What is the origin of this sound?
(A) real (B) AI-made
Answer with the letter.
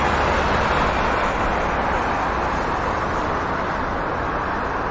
A